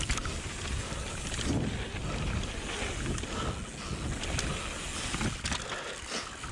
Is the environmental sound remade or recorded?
recorded